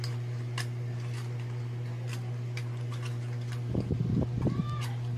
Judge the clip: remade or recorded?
recorded